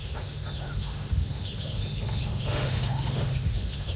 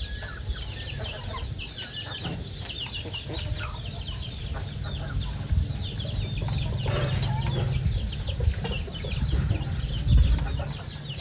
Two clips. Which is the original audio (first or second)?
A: second